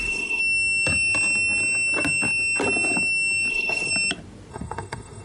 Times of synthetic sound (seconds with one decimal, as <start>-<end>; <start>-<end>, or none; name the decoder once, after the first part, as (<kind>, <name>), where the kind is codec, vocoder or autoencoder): 0.0-0.4 (codec, SNAC); 3.5-3.9; 4.5-5.2